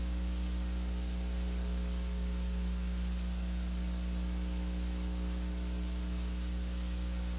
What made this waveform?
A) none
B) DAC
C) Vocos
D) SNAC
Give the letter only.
B